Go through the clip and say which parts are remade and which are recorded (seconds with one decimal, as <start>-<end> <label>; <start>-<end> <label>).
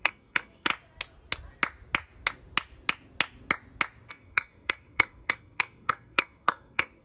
0.0-0.7 remade; 0.7-4.1 recorded; 4.1-7.0 remade